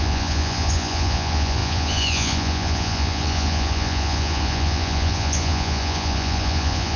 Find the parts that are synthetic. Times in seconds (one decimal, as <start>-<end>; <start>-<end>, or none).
0.0-7.0